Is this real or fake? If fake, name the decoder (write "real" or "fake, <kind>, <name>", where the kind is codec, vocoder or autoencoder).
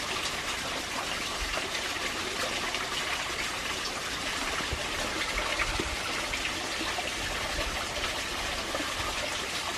real